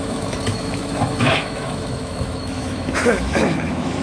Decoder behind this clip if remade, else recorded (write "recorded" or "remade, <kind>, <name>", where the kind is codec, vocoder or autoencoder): remade, autoencoder, DAC-VAE